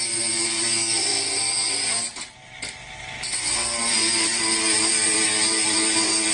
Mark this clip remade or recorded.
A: remade